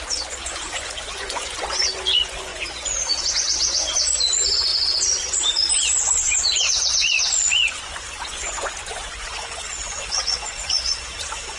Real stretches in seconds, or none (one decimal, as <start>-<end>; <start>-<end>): none